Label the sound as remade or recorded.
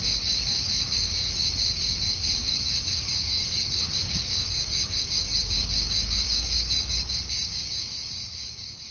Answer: remade